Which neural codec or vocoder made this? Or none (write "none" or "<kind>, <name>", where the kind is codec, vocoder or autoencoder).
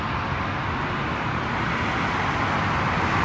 none